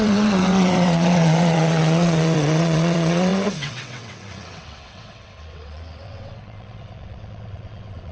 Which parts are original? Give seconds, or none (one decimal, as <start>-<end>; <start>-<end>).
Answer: none